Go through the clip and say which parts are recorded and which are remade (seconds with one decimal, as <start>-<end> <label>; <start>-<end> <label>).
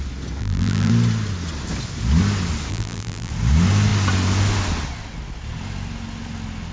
0.0-0.4 recorded; 0.4-0.9 remade; 0.9-2.7 recorded; 2.7-3.3 remade; 3.3-6.7 recorded